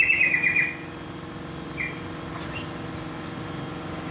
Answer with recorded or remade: recorded